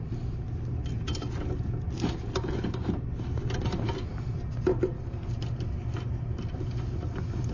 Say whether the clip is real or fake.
real